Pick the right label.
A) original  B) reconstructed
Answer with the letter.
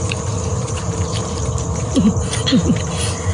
A